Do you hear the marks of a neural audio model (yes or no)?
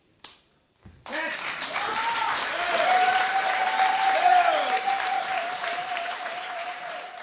yes